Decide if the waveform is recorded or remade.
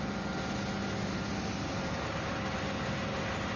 recorded